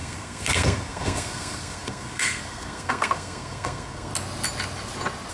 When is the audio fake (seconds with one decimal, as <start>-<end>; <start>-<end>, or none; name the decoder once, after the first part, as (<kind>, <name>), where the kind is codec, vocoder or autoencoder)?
0.0-4.1 (codec, SNAC)

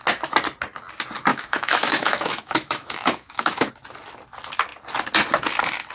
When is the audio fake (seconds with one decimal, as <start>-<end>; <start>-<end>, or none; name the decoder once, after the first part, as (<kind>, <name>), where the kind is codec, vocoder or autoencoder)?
1.3-3.7 (autoencoder, DAC-VAE)

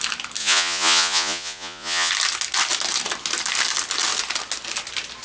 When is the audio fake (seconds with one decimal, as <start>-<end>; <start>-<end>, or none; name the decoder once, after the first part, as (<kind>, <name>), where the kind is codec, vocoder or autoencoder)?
0.4-2.1 (vocoder, Vocos)

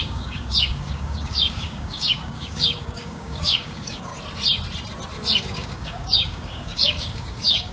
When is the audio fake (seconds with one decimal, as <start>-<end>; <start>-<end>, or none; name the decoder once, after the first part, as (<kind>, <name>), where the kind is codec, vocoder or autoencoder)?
0.0-4.1 (codec, DAC); 5.4-7.7

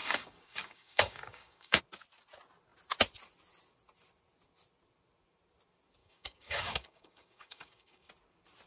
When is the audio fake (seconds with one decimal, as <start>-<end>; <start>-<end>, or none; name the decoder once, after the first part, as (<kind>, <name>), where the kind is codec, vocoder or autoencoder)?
0.0-1.8 (codec, DAC); 6.0-8.1

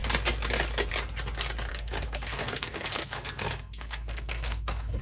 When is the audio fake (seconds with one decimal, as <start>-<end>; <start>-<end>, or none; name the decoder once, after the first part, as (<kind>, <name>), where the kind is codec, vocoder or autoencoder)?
1.7-5.0 (codec, SNAC)

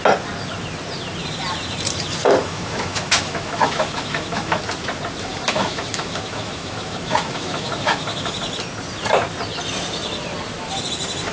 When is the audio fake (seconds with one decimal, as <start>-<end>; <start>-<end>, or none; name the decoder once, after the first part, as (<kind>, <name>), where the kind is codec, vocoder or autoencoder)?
2.4-4.6 (autoencoder, DAC-VAE); 5.2-8.3